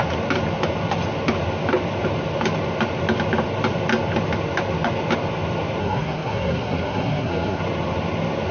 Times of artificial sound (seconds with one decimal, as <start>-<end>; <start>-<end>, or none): 5.8-7.6